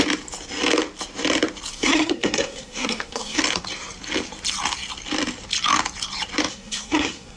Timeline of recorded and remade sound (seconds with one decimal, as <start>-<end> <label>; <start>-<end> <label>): 0.0-1.7 recorded; 1.7-3.4 remade; 3.4-6.5 recorded; 6.5-7.4 remade